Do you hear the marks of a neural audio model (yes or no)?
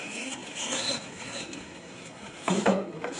yes